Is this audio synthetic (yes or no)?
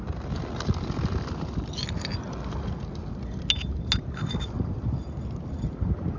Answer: no